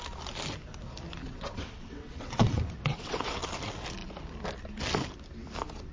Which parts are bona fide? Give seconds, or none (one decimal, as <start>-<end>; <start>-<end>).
0.0-1.2; 3.4-5.9